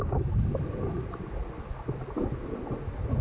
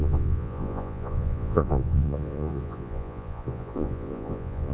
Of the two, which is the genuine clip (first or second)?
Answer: first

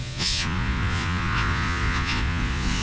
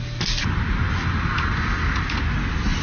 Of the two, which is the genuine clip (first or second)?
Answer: second